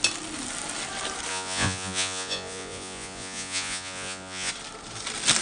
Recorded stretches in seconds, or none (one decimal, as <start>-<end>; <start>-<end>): 0.0-1.3; 4.5-5.4